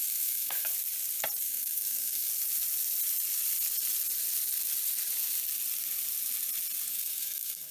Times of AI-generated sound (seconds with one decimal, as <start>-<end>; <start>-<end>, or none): 0.0-0.7; 1.4-2.3; 6.9-7.7